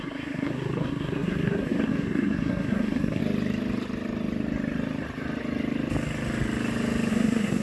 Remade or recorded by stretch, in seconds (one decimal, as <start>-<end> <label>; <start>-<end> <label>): 0.0-3.2 remade; 3.2-7.1 recorded; 7.1-7.6 remade